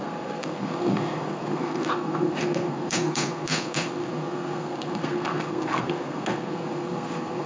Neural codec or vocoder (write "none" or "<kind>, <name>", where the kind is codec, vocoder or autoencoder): codec, SNAC